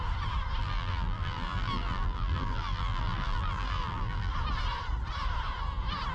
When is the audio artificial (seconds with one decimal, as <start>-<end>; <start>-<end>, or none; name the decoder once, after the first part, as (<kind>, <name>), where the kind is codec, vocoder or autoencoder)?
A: 0.6-4.3 (vocoder, BigVGAN v2)